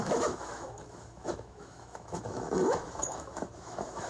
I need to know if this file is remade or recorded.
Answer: remade